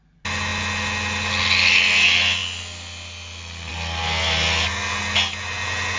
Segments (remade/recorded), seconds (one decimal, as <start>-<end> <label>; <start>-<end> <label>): 0.0-6.0 recorded